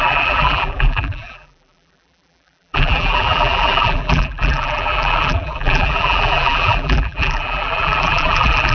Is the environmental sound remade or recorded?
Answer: remade